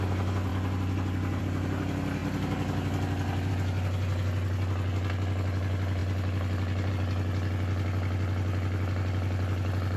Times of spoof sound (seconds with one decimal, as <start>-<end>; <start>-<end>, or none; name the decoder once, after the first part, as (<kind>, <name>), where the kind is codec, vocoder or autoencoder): none